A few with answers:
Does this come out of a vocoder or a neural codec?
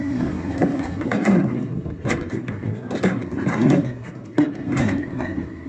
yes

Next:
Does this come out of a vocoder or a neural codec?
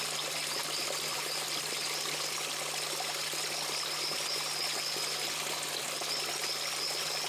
no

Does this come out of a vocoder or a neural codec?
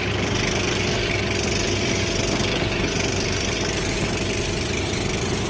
no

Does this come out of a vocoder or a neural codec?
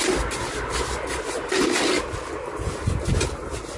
no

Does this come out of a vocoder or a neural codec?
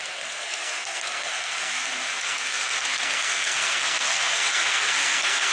yes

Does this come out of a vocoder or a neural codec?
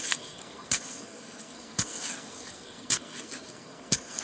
yes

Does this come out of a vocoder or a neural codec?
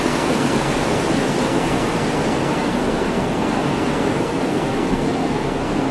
yes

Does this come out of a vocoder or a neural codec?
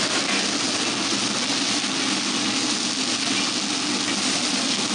no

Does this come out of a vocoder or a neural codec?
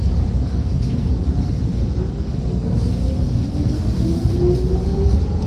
yes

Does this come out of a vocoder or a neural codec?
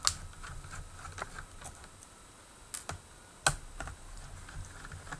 no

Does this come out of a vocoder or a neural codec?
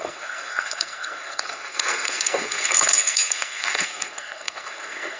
yes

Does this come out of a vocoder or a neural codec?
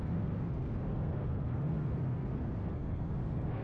yes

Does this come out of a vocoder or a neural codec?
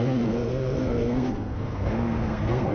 yes